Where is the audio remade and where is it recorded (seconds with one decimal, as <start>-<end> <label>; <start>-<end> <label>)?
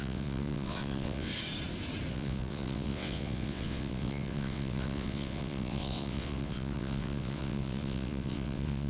0.0-1.3 remade; 1.3-2.1 recorded; 2.1-8.9 remade